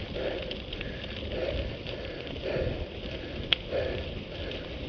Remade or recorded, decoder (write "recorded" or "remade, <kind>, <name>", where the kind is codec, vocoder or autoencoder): recorded